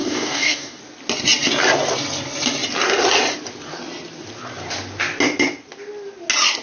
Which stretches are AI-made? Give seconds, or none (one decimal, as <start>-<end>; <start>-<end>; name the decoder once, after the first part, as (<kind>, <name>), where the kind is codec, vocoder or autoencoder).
0.0-0.8 (codec, DAC)